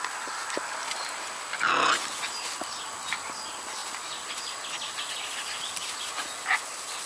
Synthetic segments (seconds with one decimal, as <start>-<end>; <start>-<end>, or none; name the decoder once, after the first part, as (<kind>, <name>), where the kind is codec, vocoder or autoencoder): none